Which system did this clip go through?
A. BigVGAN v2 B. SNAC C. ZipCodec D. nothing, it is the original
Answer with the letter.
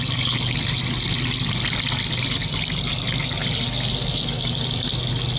D